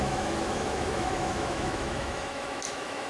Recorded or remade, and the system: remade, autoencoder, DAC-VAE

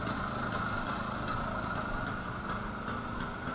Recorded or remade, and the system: recorded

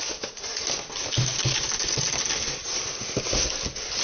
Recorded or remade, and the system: recorded